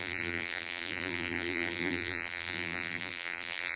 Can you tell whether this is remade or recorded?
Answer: remade